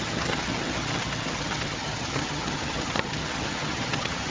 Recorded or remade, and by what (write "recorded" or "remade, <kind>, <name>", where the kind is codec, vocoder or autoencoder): remade, vocoder, HiFi-GAN